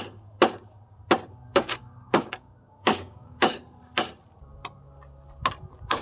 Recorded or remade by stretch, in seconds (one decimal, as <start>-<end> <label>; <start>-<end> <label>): 0.0-1.5 recorded; 1.5-3.6 remade; 3.6-6.0 recorded

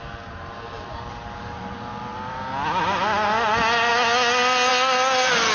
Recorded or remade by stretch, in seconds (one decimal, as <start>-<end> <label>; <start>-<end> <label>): 0.0-5.5 recorded